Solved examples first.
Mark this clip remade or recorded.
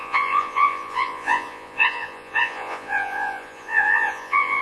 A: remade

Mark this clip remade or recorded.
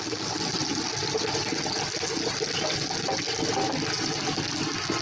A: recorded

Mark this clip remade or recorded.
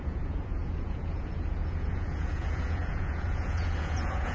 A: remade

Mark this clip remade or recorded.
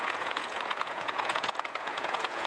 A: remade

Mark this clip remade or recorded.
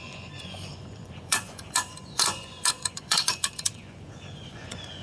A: remade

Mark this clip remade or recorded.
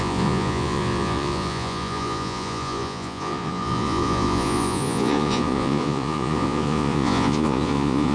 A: remade